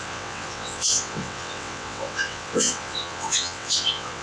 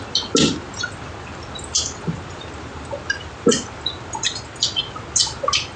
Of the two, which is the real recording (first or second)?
second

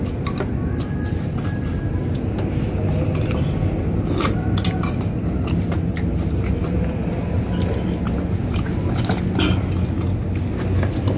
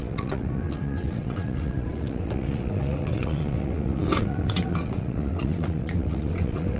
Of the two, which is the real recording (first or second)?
first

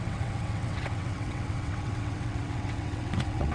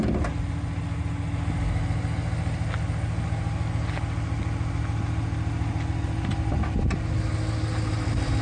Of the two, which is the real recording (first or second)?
second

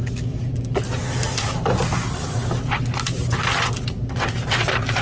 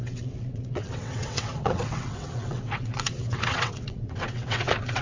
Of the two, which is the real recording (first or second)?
first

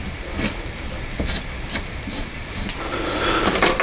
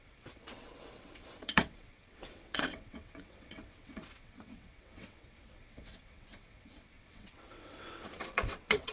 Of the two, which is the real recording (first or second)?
first